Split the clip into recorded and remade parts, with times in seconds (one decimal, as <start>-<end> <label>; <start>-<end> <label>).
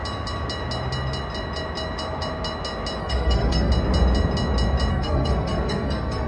0.0-3.0 recorded; 3.0-3.7 remade; 3.7-4.9 recorded; 4.9-6.3 remade